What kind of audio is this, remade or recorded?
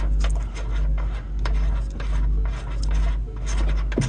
recorded